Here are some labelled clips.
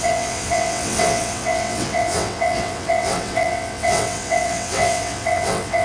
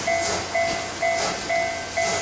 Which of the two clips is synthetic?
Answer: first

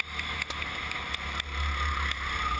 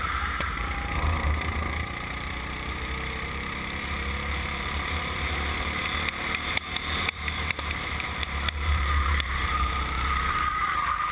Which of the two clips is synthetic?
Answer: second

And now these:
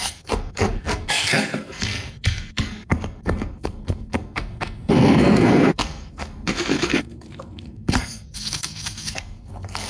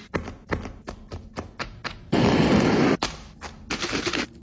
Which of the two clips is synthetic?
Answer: first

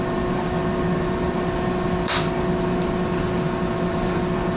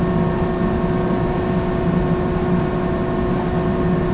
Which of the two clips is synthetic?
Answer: first